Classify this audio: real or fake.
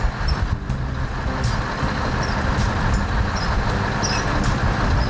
real